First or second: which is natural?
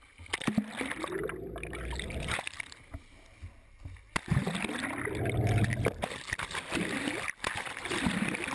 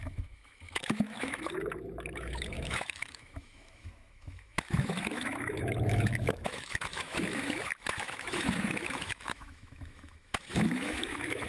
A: first